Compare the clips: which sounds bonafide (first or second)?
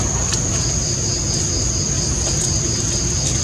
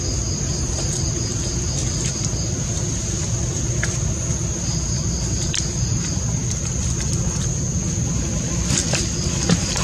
first